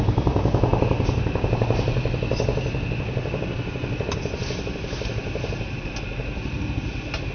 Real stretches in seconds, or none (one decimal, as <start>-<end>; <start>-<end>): 0.0-7.3